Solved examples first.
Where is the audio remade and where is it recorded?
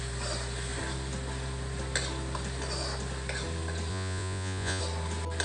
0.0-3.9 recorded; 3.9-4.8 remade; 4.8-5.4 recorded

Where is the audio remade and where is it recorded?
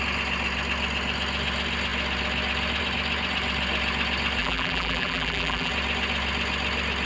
0.0-4.4 recorded; 4.4-5.7 remade; 5.7-7.1 recorded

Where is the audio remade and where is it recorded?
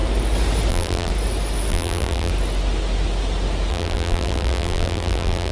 0.0-0.7 recorded; 0.7-1.1 remade; 1.1-1.7 recorded; 1.7-2.3 remade; 2.3-3.7 recorded; 3.7-5.5 remade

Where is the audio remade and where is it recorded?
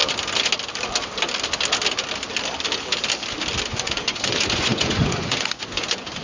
0.0-3.7 recorded; 3.7-6.2 remade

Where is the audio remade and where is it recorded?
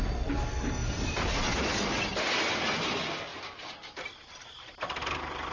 0.0-5.5 recorded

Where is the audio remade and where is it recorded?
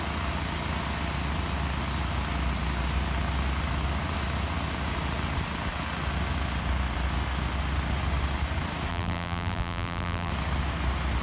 0.0-8.9 recorded; 8.9-10.3 remade; 10.3-11.2 recorded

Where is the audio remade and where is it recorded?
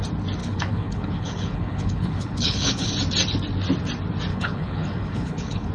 0.0-0.4 recorded; 0.4-2.9 remade; 2.9-4.3 recorded; 4.3-5.7 remade